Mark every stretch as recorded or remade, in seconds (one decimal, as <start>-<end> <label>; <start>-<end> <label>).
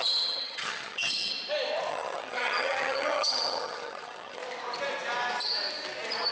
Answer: 0.0-1.3 remade; 1.3-1.9 recorded; 1.9-4.4 remade; 4.4-6.3 recorded